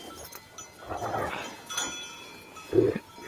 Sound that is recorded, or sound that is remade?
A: recorded